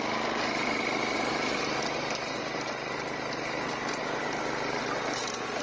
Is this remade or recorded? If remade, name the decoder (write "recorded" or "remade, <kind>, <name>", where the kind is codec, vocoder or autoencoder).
remade, vocoder, BigVGAN v2